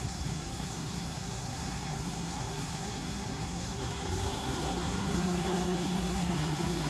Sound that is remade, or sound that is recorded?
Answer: remade